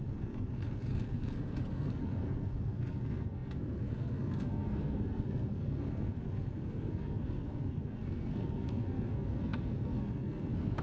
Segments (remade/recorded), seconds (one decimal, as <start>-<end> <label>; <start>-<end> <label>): 0.0-10.8 remade

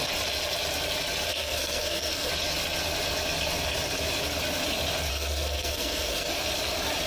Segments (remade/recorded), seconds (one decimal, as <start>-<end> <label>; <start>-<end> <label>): 0.0-1.3 recorded; 1.3-2.3 remade; 2.3-5.1 recorded; 5.1-6.3 remade; 6.3-7.1 recorded

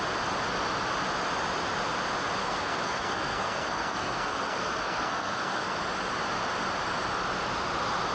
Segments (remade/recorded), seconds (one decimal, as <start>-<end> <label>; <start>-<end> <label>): 0.0-2.4 recorded; 2.4-5.8 remade; 5.8-8.1 recorded

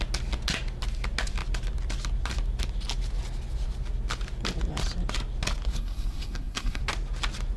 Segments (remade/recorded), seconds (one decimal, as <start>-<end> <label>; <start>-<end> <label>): 0.0-5.7 recorded; 5.7-6.8 remade; 6.8-7.6 recorded

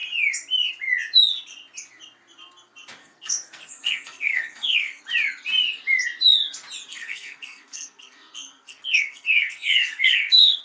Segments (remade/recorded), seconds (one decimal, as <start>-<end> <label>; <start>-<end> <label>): 0.0-3.0 recorded; 3.0-5.0 remade; 5.0-6.9 recorded; 6.9-10.6 remade

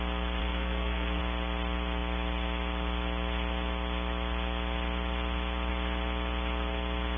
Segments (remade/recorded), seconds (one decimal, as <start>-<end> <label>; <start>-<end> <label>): 0.0-0.4 recorded; 0.4-1.2 remade; 1.2-7.2 recorded